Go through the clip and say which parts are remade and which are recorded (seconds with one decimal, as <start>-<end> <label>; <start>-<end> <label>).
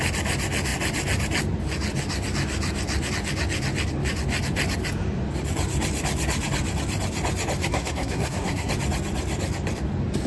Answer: 0.0-7.6 recorded; 7.6-8.7 remade; 8.7-10.3 recorded